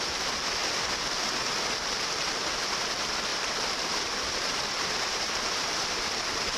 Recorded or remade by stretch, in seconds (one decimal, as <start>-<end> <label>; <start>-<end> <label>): 0.0-3.3 recorded; 3.3-6.6 remade